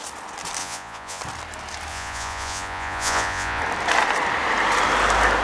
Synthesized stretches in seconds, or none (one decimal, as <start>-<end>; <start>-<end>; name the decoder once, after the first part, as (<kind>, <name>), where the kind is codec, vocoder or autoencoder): 0.6-1.2 (vocoder, Vocos); 1.9-3.6